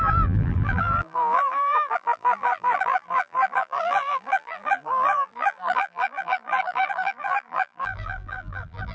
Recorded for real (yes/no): no